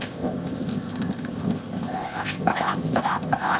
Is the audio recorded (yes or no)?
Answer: no